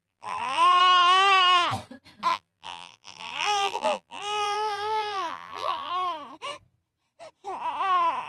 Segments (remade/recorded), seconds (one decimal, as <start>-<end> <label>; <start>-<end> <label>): 0.0-0.8 remade; 0.8-2.3 recorded; 2.3-5.9 remade; 5.9-8.3 recorded